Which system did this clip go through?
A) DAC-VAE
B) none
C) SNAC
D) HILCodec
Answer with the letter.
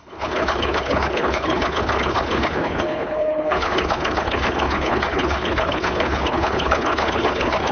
D